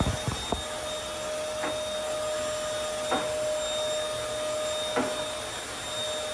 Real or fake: real